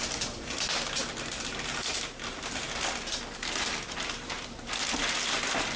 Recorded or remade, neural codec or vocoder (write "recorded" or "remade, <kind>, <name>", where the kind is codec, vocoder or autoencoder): recorded